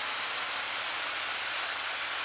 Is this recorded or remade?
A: recorded